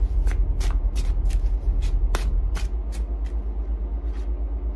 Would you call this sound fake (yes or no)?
no